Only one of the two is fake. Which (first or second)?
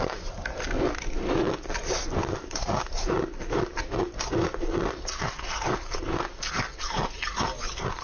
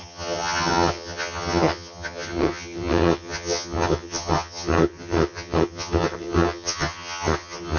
second